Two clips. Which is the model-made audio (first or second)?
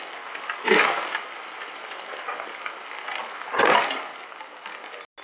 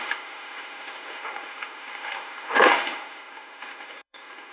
second